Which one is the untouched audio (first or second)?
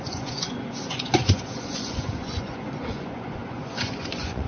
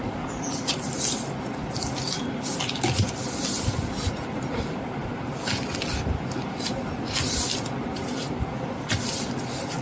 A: second